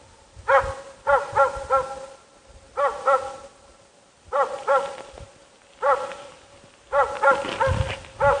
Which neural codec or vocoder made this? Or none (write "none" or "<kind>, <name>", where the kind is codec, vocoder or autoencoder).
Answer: none